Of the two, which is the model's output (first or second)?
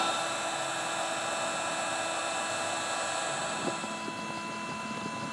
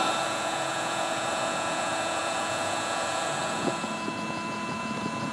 second